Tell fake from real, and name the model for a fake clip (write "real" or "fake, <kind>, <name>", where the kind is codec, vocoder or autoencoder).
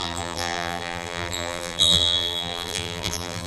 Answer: fake, vocoder, BigVGAN v2